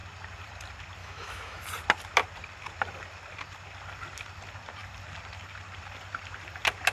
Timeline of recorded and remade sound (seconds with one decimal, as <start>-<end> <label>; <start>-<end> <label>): 0.0-1.0 recorded; 1.0-1.6 remade; 1.6-6.9 recorded